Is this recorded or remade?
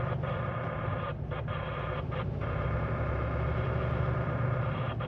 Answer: remade